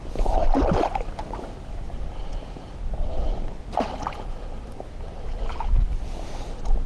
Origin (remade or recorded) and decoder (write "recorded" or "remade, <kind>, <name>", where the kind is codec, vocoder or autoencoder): recorded